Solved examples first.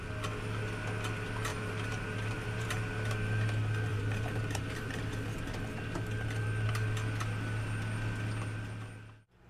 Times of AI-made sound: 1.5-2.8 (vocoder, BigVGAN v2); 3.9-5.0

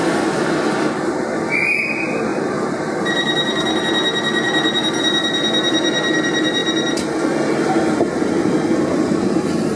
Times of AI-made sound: 2.3-3.8 (vocoder, BigVGAN v2)

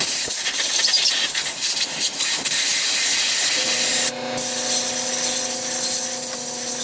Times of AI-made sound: none

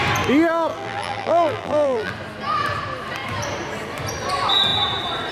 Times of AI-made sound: 0.7-2.1 (vocoder, BigVGAN v2)